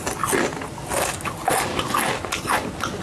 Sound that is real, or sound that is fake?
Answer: real